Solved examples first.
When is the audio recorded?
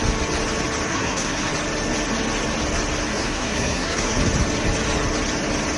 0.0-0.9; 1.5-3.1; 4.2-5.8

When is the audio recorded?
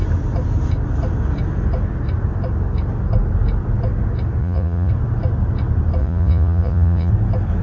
0.0-4.4; 4.9-6.0; 7.1-7.6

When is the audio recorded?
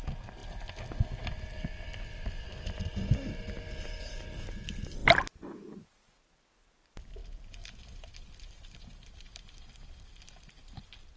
0.0-11.2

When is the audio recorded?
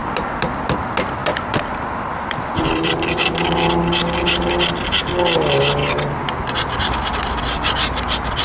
0.0-1.2; 1.7-2.1; 2.9-5.8; 7.4-8.4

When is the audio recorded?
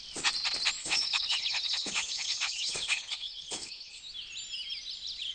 0.0-0.8; 4.0-5.3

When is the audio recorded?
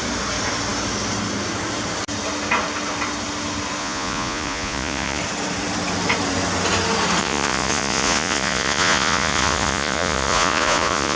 0.0-3.8; 5.2-7.2